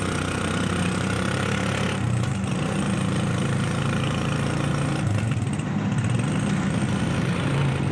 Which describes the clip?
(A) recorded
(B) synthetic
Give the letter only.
B